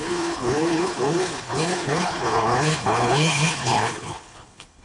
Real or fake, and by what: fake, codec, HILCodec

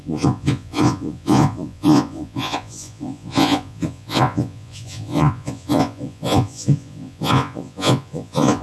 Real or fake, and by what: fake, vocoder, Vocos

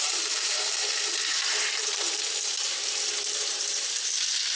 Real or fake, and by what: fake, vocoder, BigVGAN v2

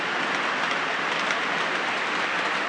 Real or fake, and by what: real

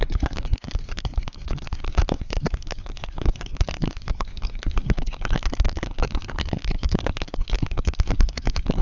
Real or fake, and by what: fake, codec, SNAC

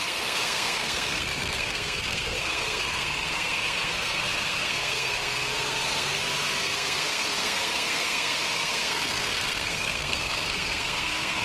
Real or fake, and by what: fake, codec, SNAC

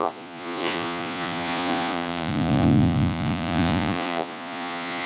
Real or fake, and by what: fake, vocoder, Vocos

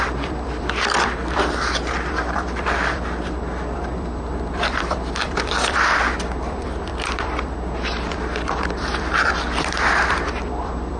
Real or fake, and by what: fake, vocoder, BigVGAN v2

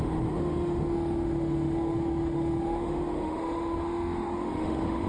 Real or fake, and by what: fake, autoencoder, DAC-VAE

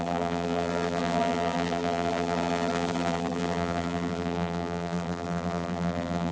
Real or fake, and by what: fake, vocoder, BigVGAN v2